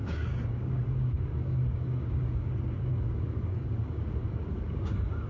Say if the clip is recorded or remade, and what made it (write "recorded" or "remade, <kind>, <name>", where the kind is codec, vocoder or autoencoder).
remade, codec, DAC